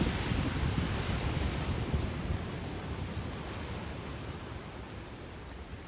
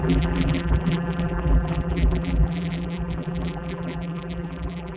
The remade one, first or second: second